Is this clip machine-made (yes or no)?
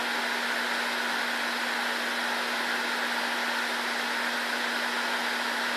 no